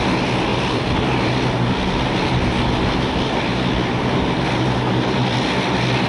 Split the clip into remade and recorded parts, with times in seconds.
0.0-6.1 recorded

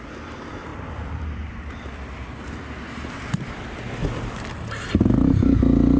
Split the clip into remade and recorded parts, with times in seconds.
0.0-0.7 recorded; 0.7-1.9 remade; 1.9-6.0 recorded

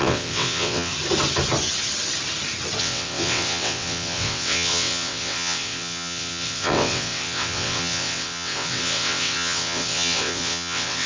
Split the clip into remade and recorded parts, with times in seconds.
0.0-0.9 remade; 0.9-2.8 recorded; 2.8-11.1 remade

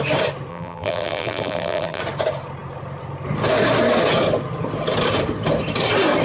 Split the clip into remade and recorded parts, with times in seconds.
0.0-0.5 recorded; 0.5-2.0 remade; 2.0-6.2 recorded